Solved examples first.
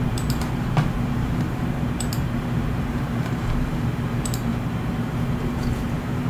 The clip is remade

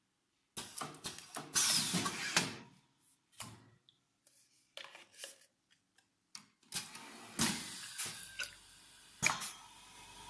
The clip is recorded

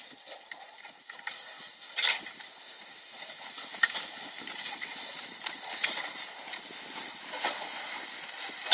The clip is recorded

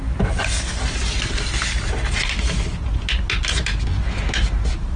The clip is recorded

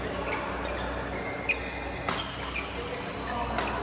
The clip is recorded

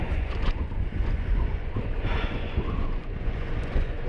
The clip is remade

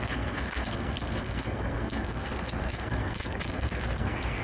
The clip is remade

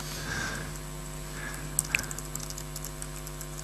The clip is recorded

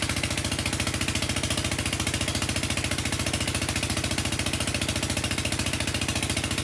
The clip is recorded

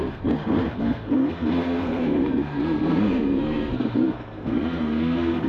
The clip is remade